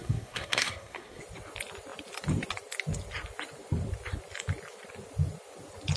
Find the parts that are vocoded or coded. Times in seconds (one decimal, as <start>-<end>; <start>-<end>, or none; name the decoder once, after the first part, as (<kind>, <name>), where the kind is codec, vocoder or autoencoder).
0.0-1.2 (codec, SNAC)